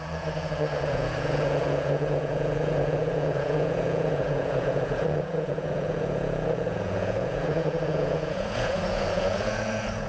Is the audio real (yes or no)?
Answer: no